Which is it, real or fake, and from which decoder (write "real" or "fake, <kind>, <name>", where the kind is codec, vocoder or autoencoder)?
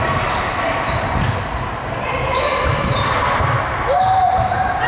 real